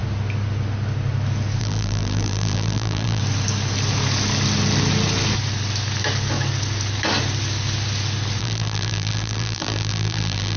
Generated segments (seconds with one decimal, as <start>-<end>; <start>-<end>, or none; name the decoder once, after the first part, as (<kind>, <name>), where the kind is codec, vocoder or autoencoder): 1.6-3.2 (vocoder, BigVGAN v2); 8.4-10.6